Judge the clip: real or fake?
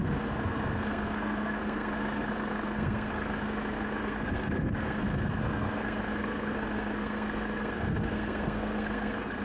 fake